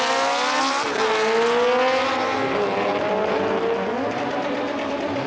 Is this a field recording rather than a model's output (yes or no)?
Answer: yes